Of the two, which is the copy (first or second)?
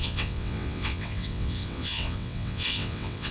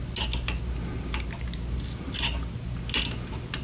first